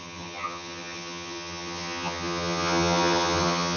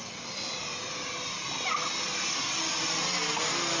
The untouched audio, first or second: second